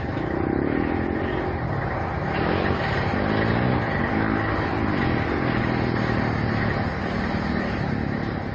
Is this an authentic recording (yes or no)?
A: yes